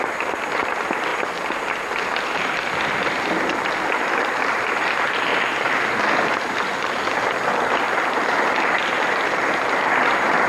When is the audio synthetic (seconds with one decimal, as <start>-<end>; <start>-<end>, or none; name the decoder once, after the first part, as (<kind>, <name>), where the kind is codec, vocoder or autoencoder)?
0.0-5.3 (vocoder, BigVGAN v2); 7.7-10.5